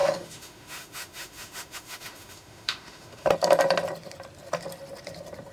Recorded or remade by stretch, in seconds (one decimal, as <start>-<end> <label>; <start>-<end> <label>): 0.0-3.3 remade; 3.3-5.5 recorded